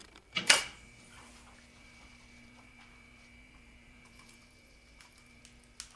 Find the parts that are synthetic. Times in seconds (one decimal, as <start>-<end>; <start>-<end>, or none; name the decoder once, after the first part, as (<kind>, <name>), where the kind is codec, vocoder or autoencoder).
0.0-1.3 (vocoder, BigVGAN v2); 1.8-5.4